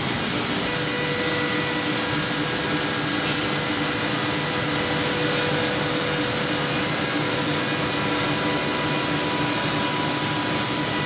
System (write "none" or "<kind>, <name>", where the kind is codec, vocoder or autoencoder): none